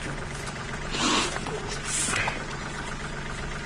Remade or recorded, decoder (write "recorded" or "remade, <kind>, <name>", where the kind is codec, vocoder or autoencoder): remade, vocoder, Vocos